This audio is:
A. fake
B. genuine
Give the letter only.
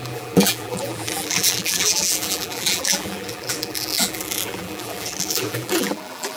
A